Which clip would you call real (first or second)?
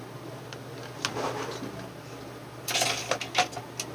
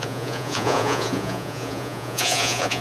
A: first